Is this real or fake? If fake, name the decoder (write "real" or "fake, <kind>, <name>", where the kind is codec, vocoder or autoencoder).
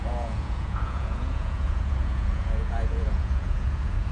fake, vocoder, Vocos